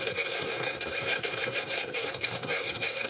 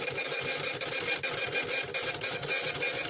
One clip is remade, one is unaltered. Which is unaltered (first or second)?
second